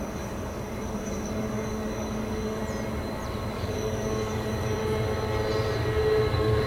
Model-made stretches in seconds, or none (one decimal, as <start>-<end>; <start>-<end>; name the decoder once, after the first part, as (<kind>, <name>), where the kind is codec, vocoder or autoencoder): 0.0-2.6 (codec, DAC); 3.5-4.8; 6.3-6.7